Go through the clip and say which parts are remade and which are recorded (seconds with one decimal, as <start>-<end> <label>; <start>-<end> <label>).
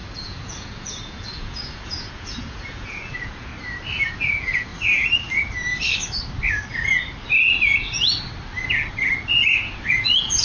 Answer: 0.0-3.5 remade; 3.5-4.3 recorded; 4.3-4.7 remade; 4.7-9.9 recorded; 9.9-10.4 remade